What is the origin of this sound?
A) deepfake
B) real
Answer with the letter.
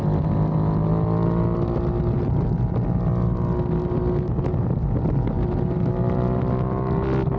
B